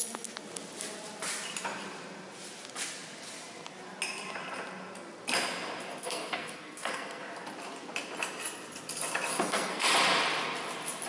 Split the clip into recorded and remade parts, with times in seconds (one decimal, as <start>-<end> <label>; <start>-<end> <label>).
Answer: 0.0-6.0 recorded; 6.0-7.2 remade; 7.2-9.3 recorded; 9.3-9.9 remade; 9.9-11.1 recorded